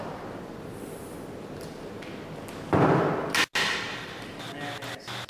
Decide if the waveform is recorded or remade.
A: recorded